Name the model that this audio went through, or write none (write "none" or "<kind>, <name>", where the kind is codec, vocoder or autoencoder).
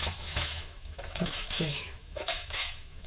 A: autoencoder, DAC-VAE